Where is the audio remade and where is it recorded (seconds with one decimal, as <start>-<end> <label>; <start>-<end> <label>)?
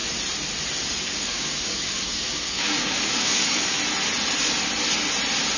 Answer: 0.0-1.0 recorded; 1.0-3.8 remade; 3.8-5.6 recorded